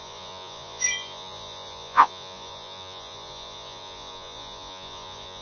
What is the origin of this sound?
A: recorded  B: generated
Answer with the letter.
B